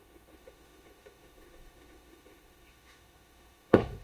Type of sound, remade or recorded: remade